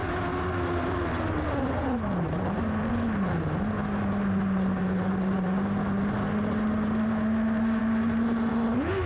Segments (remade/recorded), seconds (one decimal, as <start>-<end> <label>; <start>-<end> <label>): 0.0-9.1 recorded